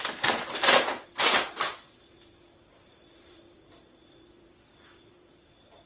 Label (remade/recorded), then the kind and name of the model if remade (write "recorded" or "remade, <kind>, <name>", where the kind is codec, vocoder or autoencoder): remade, vocoder, BigVGAN v2